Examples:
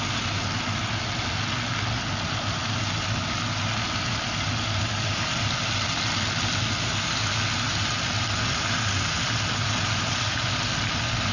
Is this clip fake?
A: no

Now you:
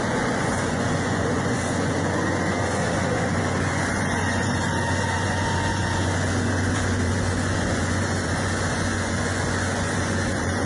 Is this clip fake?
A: yes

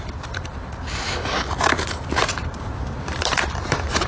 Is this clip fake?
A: yes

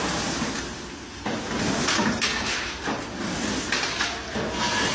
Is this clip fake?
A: no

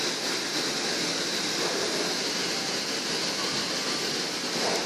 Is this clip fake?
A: no